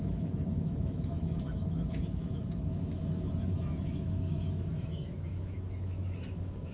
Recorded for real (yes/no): no